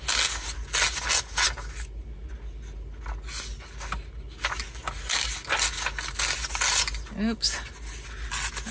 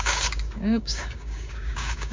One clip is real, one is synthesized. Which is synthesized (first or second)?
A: second